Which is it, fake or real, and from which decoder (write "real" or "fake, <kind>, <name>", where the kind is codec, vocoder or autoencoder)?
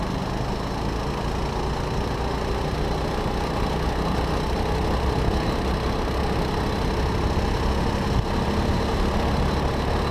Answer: real